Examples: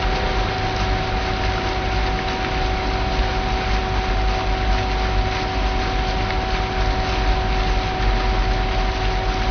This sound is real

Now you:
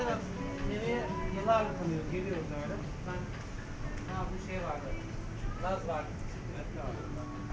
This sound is real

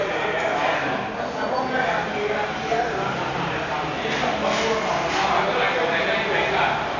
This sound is real